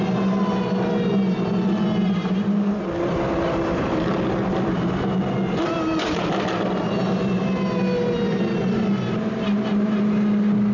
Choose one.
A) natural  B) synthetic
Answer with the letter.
A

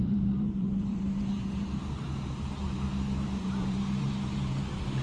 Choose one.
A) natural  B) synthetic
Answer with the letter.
B